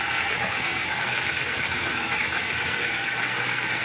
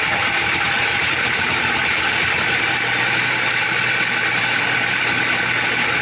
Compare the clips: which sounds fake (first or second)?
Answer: first